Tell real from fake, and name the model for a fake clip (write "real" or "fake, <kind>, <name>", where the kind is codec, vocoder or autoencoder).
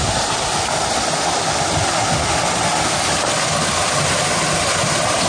real